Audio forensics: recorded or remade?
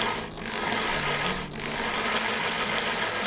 recorded